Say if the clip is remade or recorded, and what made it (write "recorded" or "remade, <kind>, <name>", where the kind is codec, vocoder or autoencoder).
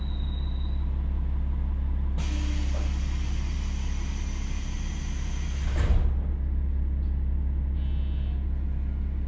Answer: recorded